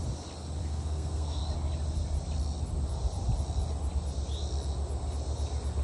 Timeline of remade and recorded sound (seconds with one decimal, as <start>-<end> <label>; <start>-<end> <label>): 0.0-0.6 recorded; 0.6-1.4 remade; 1.4-5.8 recorded